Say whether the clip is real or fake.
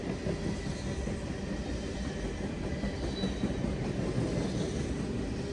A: real